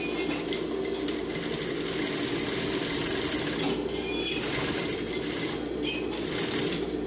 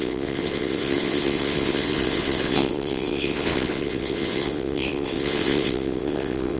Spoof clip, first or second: second